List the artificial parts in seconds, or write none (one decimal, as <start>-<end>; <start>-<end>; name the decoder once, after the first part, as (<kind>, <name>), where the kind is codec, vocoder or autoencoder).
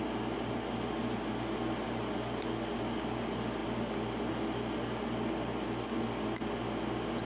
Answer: none